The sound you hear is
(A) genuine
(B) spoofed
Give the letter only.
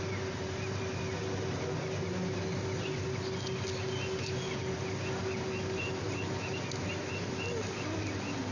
A